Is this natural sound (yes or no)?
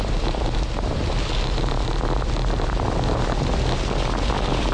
yes